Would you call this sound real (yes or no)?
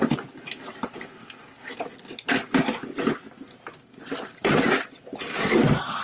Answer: yes